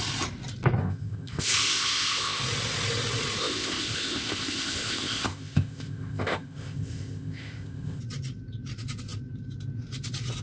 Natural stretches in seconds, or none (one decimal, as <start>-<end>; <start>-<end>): 0.0-0.8; 2.4-3.4; 8.0-10.4